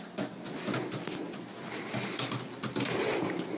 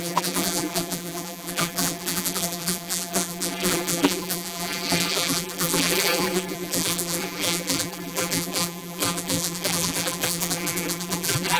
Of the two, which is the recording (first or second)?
first